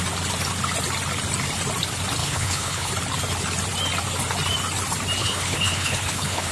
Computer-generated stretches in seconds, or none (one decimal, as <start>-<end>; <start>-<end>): 2.2-2.9; 5.2-6.5